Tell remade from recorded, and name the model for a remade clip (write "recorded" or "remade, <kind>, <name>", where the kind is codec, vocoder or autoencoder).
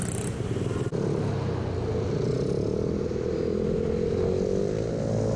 recorded